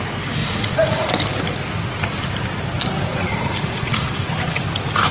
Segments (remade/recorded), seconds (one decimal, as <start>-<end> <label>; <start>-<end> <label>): 0.0-0.4 recorded; 0.4-1.1 remade; 1.1-3.1 recorded; 3.1-4.1 remade; 4.1-5.1 recorded